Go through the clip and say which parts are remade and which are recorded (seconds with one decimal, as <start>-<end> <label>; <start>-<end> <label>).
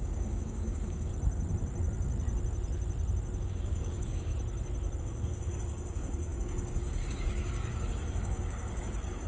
0.0-1.1 remade; 1.1-3.4 recorded; 3.4-4.3 remade; 4.3-5.0 recorded; 5.0-9.3 remade